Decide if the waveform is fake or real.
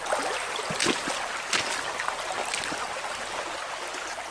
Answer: real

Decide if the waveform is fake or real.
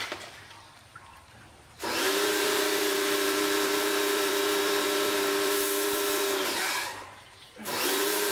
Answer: fake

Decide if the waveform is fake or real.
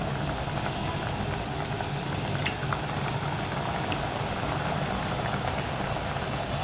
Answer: real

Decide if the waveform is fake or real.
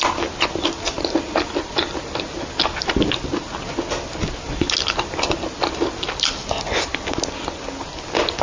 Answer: real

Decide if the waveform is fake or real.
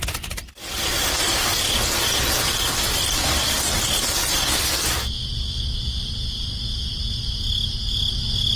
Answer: real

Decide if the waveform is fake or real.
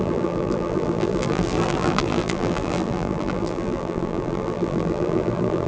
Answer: fake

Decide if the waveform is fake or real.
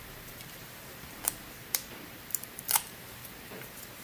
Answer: fake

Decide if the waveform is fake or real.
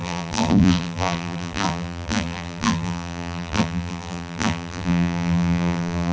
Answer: fake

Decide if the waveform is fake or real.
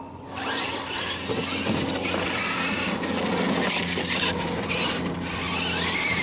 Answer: real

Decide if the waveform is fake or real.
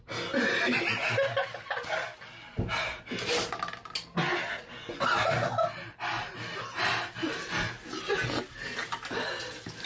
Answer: real